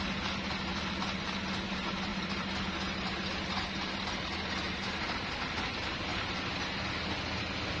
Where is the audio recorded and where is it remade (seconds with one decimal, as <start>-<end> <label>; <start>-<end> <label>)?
0.0-2.1 recorded; 2.1-5.3 remade; 5.3-6.1 recorded; 6.1-6.8 remade; 6.8-7.8 recorded